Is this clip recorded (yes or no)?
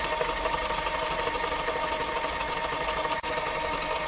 yes